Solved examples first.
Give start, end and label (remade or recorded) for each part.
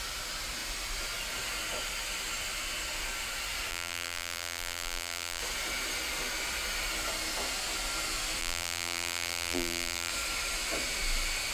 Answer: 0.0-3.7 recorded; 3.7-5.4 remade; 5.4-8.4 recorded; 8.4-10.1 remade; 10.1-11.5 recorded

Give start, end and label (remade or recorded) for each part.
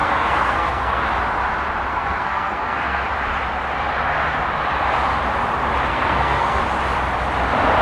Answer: 0.0-1.0 remade; 1.0-1.9 recorded; 1.9-3.0 remade; 3.0-5.9 recorded; 5.9-6.6 remade; 6.6-7.8 recorded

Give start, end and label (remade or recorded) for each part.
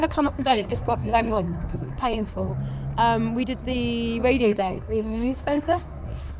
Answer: 0.0-2.5 remade; 2.5-4.4 recorded; 4.4-6.4 remade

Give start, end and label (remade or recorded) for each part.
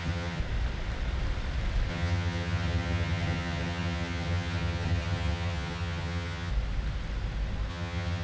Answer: 0.0-0.4 remade; 0.4-1.9 recorded; 1.9-6.5 remade; 6.5-7.7 recorded; 7.7-8.2 remade